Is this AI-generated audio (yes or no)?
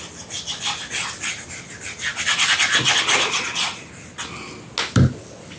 no